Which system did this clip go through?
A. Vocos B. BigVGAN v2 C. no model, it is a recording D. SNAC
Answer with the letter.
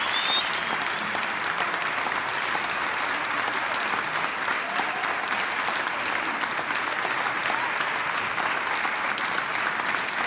C